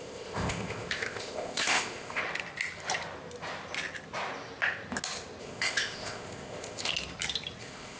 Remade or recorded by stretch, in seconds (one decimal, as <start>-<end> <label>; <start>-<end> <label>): 0.0-2.2 remade; 2.2-5.4 recorded; 5.4-6.9 remade; 6.9-7.6 recorded; 7.6-8.0 remade